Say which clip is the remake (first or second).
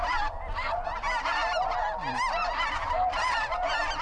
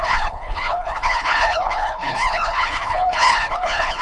second